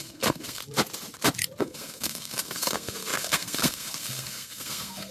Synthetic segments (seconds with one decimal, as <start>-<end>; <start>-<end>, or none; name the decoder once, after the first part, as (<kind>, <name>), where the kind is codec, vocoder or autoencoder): 0.0-0.6 (codec, SNAC); 1.6-5.1